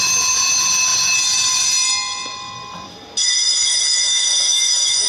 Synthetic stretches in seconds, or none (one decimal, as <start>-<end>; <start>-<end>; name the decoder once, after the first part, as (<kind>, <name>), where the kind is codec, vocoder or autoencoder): 3.2-5.1 (autoencoder, DAC-VAE)